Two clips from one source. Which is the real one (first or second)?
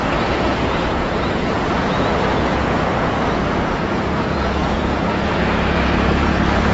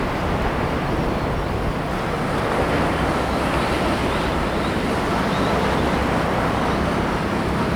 second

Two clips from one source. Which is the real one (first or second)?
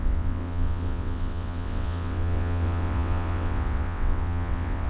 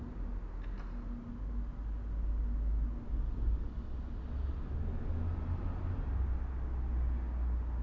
second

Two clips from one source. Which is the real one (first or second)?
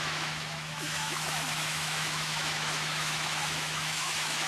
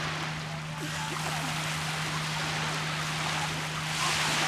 second